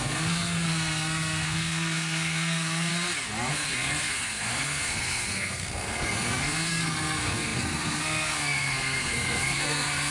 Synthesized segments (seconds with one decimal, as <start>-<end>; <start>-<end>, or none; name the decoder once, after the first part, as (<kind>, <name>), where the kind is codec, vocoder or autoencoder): 0.0-2.9 (codec, SNAC); 3.5-10.1